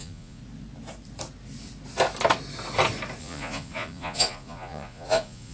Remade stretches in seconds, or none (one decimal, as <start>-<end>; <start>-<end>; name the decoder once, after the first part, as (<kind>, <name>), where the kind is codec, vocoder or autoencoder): 0.0-0.4 (vocoder, Vocos); 3.2-5.5